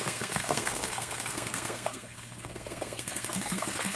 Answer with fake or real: fake